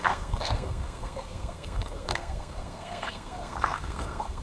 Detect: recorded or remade remade